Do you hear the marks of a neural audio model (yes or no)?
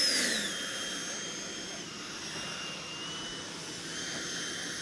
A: no